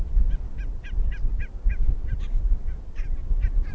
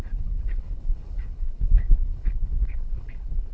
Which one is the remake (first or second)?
second